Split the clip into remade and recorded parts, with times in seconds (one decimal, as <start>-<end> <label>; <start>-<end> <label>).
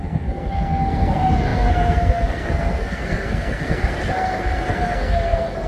0.0-5.7 remade